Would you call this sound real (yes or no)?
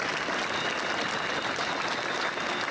yes